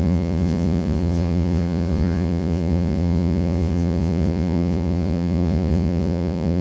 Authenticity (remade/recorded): remade